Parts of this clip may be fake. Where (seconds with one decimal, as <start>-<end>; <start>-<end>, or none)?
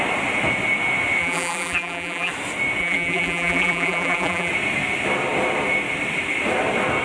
1.2-2.3; 2.8-4.5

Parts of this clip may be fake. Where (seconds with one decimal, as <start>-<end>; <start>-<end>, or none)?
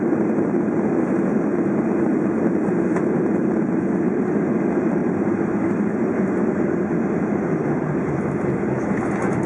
0.0-1.5; 4.6-9.5